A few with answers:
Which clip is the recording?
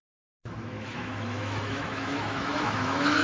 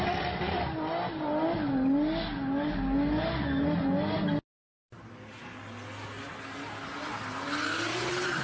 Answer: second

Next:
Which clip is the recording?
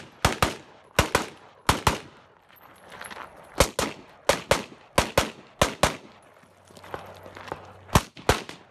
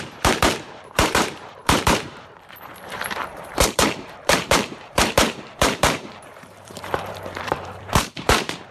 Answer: first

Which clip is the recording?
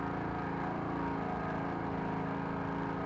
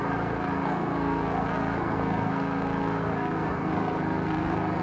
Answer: first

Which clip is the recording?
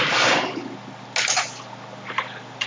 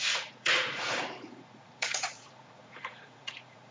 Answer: first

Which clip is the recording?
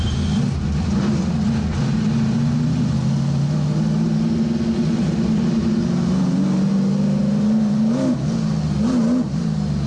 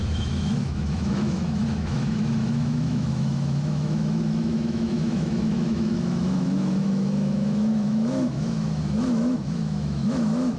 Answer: first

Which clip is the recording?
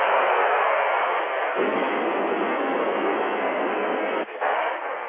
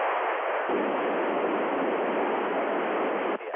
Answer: second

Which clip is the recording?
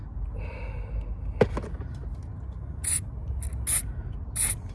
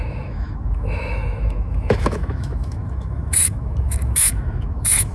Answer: first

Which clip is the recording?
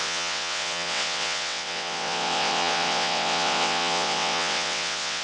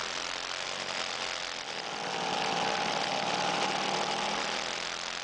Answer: second